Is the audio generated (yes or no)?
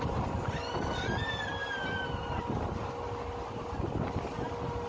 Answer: no